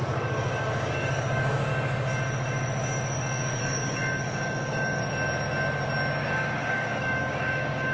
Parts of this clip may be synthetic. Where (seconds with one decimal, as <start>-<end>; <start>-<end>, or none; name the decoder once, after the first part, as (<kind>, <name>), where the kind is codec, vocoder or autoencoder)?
0.0-1.7 (codec, DAC); 3.6-5.0; 6.3-7.9